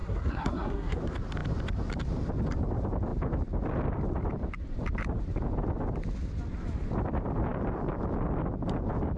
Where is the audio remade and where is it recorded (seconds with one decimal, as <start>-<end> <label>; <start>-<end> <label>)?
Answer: 0.0-1.0 remade; 1.0-9.2 recorded